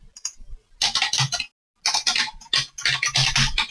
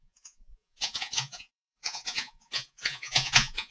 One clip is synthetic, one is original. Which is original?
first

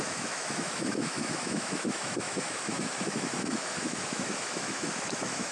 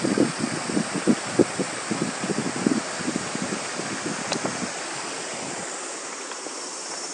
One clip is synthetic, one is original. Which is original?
second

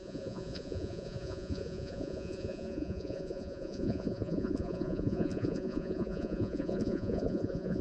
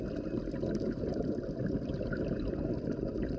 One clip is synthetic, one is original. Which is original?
second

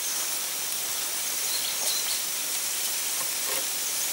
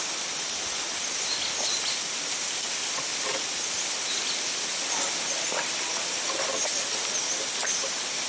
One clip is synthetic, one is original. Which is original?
second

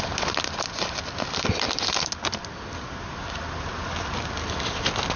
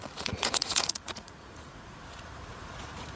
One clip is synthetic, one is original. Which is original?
first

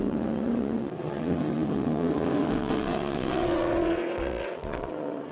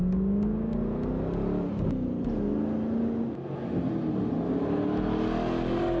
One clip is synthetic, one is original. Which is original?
second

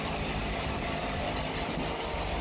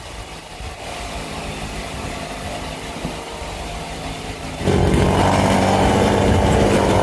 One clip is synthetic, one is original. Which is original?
second